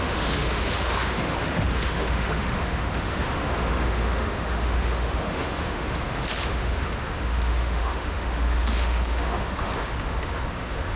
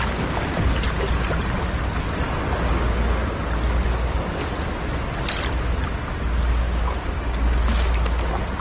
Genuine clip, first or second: second